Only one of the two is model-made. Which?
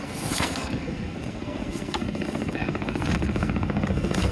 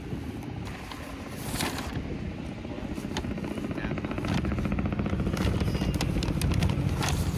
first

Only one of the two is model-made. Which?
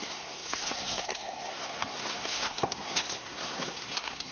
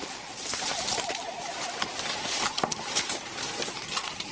first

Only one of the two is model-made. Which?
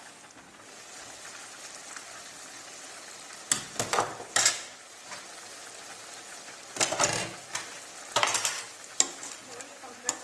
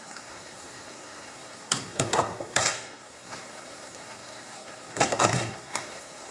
second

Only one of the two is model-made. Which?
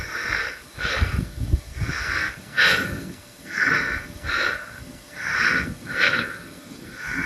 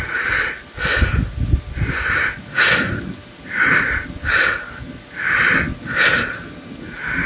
first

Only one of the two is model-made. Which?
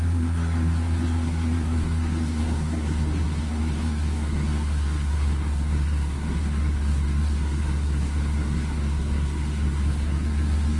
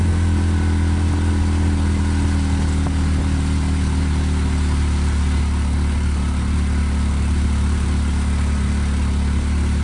first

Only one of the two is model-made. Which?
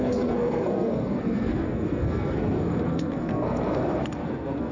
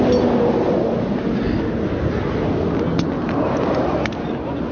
first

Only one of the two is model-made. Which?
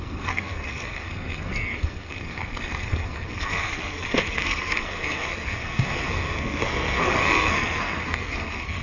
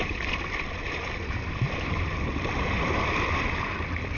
first